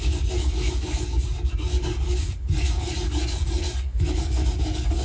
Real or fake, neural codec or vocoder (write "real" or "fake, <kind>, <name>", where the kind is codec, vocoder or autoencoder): fake, codec, DAC